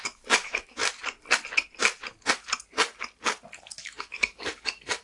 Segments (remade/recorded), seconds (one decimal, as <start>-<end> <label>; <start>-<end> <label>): 0.0-0.8 remade; 0.8-3.6 recorded; 3.6-5.0 remade